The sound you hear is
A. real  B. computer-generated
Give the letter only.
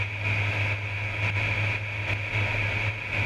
A